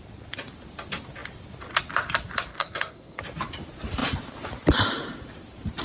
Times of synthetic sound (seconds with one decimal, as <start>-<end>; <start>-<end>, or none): 2.5-3.2

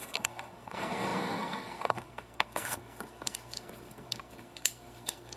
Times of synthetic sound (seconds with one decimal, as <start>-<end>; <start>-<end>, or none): 0.0-5.4

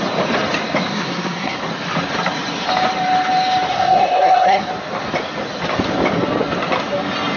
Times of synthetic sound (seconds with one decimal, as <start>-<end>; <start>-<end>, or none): 0.9-1.6; 3.7-4.7

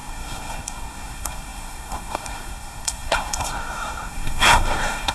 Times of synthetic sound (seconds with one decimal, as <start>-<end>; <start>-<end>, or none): 0.0-5.1

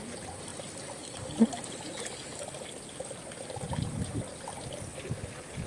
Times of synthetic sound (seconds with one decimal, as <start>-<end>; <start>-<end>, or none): none

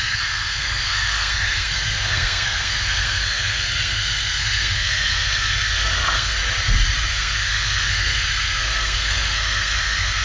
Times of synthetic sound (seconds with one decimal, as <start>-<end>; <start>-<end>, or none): 0.0-6.4; 7.1-10.2

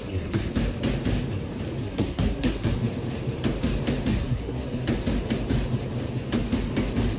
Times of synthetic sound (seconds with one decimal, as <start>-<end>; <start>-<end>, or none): 0.0-0.5; 1.8-2.7; 4.1-4.8

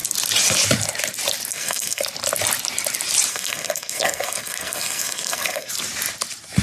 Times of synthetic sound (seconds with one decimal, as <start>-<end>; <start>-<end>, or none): 1.5-2.0; 3.3-5.7